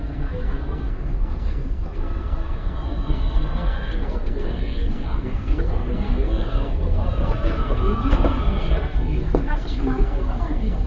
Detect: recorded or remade remade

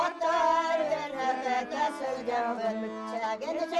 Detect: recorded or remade recorded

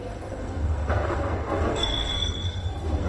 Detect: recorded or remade remade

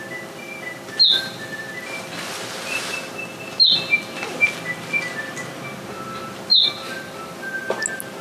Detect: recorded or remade recorded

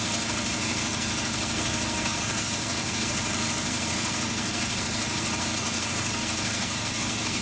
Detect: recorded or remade remade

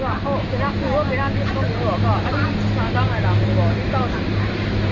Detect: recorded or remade recorded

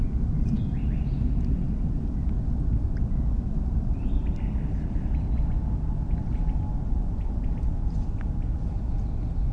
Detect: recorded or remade recorded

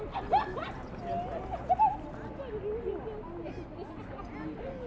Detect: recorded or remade recorded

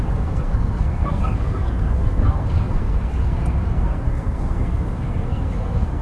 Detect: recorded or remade remade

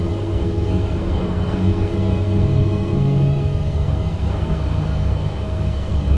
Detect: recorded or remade remade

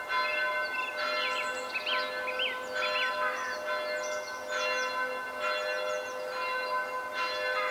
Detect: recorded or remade recorded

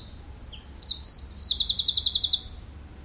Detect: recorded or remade recorded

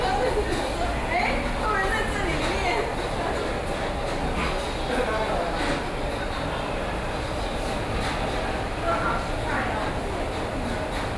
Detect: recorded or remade recorded